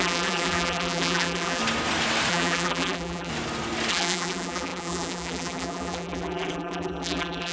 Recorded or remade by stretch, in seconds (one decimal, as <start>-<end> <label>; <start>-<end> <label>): 0.0-1.6 remade; 1.6-2.3 recorded; 2.3-3.3 remade; 3.3-3.9 recorded; 3.9-7.5 remade